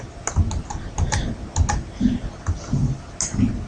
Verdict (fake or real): real